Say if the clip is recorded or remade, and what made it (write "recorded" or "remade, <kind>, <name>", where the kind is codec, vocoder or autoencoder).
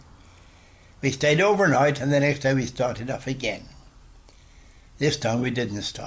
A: recorded